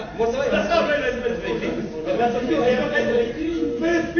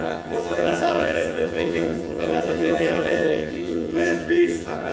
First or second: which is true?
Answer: first